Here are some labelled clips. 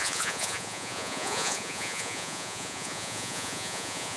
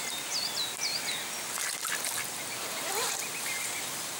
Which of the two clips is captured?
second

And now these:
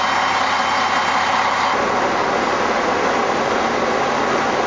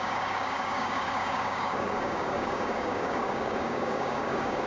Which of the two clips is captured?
first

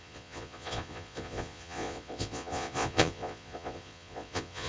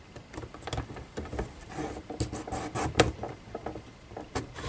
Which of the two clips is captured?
second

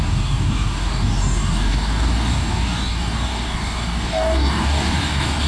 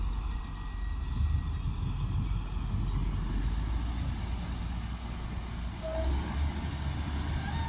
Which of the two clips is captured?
second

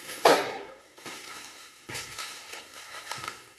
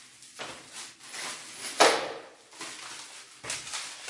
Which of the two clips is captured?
second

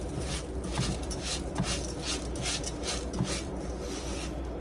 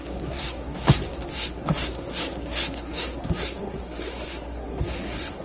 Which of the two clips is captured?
first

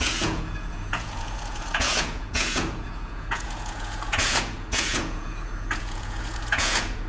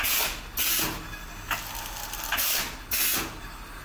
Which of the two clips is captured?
second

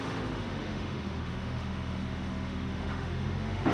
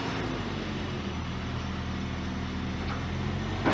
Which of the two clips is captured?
second